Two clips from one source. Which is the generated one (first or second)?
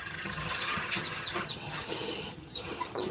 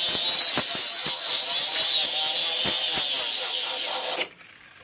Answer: first